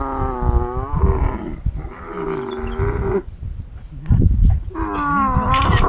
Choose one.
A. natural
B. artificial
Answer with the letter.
A